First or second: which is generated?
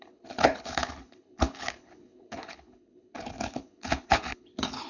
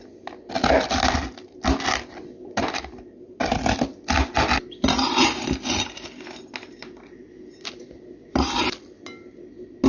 first